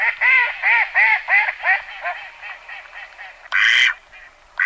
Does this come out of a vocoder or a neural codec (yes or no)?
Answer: no